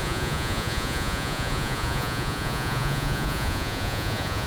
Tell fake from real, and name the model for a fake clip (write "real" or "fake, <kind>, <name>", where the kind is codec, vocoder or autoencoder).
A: fake, vocoder, Vocos